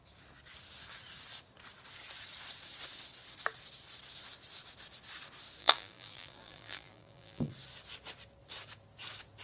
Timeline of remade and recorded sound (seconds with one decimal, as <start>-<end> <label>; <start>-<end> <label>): 0.0-5.6 recorded; 5.6-7.5 remade; 7.5-9.4 recorded